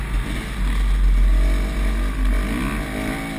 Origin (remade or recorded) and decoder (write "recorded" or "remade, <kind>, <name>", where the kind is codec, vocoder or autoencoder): recorded